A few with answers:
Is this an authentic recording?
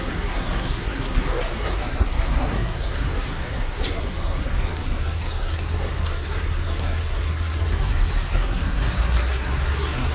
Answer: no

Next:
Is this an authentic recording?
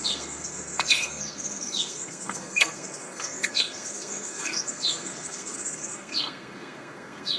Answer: no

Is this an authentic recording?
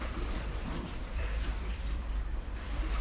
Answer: no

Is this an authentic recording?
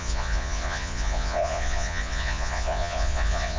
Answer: no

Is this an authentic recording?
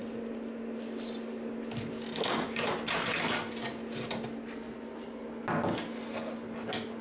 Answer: yes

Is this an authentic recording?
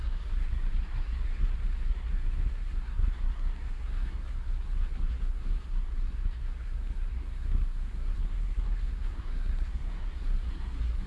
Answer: no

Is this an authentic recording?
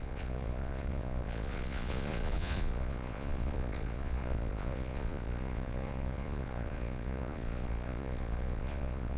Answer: no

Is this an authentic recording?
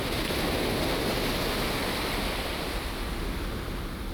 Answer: yes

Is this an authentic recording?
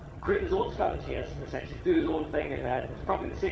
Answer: no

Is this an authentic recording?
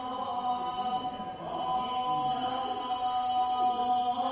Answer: yes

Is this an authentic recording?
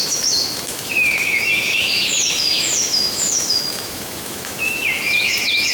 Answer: no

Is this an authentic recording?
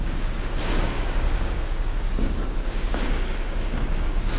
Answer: no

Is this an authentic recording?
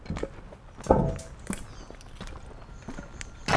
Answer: yes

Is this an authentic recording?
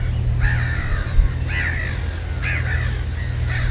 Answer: yes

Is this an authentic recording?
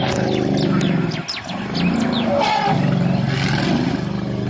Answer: yes